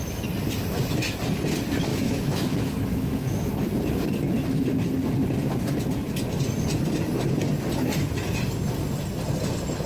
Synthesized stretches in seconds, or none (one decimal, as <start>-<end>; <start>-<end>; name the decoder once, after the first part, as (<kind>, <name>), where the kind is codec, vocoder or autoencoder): 1.9-3.5 (autoencoder, DAC-VAE)